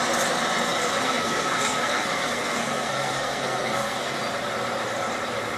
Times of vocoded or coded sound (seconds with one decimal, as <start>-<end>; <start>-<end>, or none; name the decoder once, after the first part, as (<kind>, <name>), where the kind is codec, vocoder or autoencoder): 0.8-4.2 (codec, SNAC)